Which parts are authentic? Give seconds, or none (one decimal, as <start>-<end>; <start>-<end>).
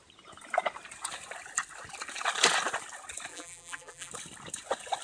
0.0-3.3; 4.1-5.0